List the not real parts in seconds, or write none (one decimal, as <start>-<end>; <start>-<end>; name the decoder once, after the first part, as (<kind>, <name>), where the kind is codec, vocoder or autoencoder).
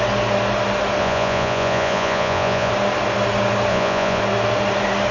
1.0-2.7 (vocoder, Vocos); 3.7-4.2